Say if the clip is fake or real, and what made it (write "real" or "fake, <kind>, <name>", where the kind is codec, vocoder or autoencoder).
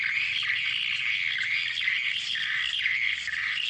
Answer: real